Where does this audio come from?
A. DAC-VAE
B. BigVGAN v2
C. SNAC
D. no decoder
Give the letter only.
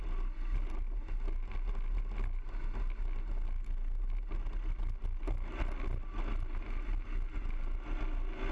D